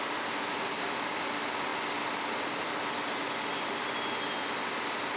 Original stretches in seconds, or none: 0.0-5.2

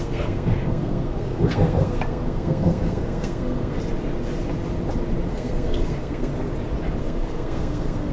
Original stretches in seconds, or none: 3.8-5.3; 6.3-7.0

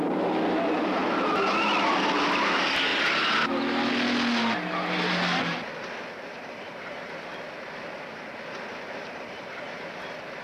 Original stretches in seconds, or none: 0.0-10.4

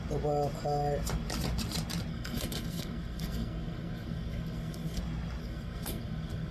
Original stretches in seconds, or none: 0.0-2.1; 5.0-5.4

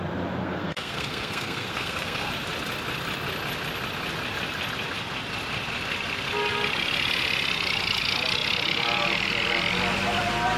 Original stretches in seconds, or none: 0.0-0.4; 2.3-10.6

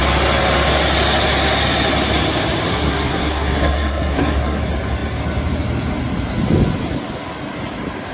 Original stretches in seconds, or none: 0.0-2.7; 4.6-8.1

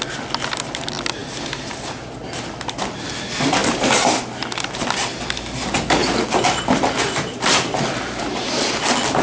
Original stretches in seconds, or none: 0.0-9.2

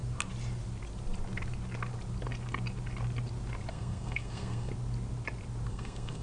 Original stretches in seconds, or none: 0.0-3.7; 4.7-5.7